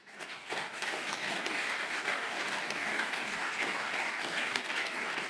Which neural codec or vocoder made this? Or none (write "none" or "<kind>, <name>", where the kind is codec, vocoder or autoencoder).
codec, DAC